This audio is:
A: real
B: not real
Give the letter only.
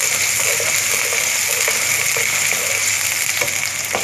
A